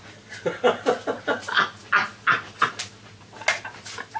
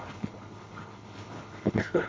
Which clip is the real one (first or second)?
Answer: first